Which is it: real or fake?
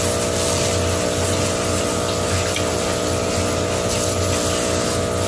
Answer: real